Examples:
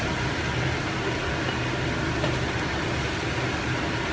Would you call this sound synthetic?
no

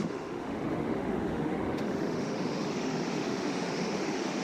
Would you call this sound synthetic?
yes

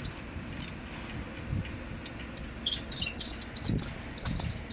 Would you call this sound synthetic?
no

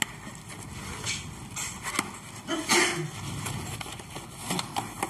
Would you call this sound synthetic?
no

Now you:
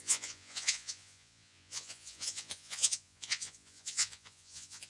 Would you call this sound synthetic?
yes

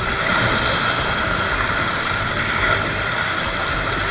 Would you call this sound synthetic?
no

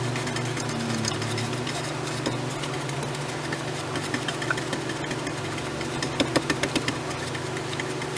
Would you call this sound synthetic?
yes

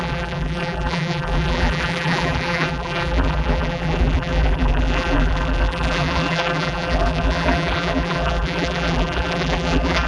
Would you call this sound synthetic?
yes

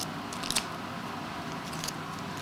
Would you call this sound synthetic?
no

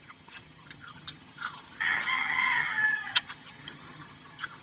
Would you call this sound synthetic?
yes